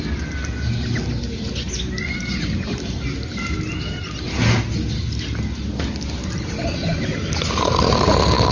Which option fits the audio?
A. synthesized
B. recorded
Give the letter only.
B